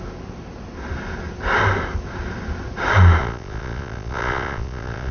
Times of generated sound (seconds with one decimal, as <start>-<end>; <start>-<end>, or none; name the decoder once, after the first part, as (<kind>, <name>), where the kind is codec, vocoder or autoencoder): 3.2-5.1 (vocoder, Vocos)